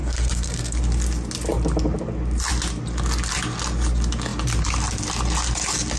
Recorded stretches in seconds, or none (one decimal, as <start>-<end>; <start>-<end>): 0.8-6.0